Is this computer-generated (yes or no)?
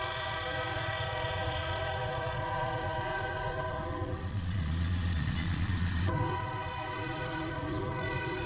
yes